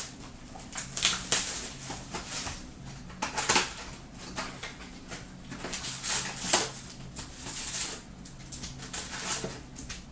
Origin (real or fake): real